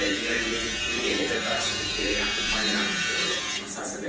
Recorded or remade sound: remade